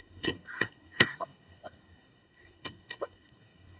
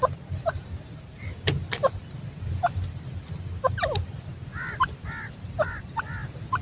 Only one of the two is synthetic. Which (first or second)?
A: first